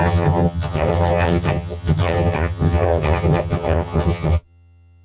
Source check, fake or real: fake